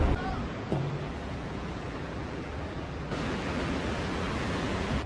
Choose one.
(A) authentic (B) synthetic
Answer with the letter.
B